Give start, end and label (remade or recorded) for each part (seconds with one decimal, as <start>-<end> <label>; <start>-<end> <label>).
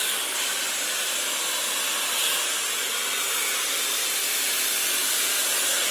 0.0-5.9 recorded